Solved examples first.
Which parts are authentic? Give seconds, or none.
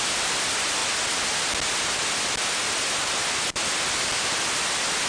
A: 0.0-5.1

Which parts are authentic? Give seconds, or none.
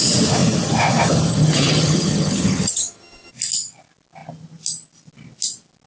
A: 0.0-1.3; 3.3-5.9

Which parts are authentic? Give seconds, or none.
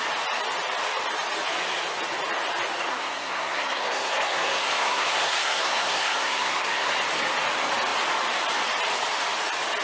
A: 0.0-2.9; 6.9-9.8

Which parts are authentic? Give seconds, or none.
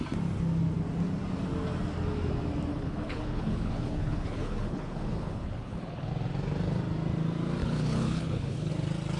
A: 0.0-2.7; 6.1-7.6; 8.7-9.2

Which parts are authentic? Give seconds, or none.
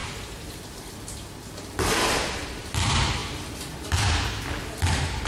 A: 0.0-5.3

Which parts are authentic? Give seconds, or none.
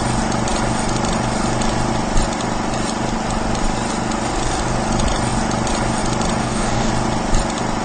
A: 0.0-6.4; 6.9-7.8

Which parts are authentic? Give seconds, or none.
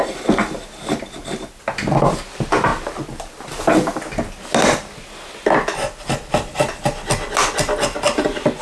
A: 0.0-8.6